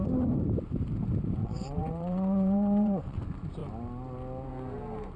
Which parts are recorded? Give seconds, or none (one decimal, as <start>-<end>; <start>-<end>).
0.0-1.4; 3.2-5.2